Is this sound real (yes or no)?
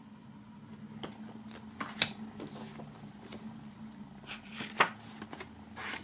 yes